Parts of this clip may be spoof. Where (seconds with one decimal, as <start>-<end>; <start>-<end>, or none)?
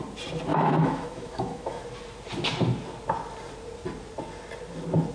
0.5-1.8